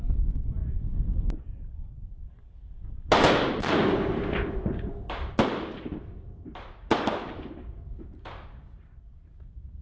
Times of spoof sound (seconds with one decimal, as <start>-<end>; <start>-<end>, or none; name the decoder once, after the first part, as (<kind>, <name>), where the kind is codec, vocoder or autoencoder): none